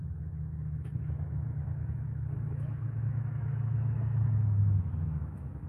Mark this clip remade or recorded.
remade